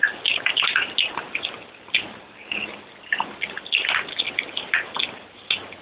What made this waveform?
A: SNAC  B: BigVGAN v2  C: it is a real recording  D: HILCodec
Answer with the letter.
C